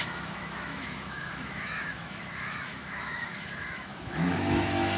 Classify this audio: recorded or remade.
remade